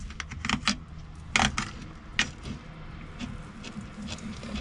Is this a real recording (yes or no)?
yes